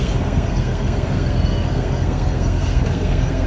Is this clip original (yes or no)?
no